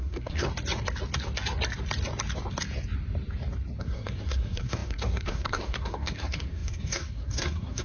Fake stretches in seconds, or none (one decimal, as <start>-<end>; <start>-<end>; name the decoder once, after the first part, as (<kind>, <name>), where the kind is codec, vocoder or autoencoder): 0.0-0.5 (codec, SNAC); 3.8-7.8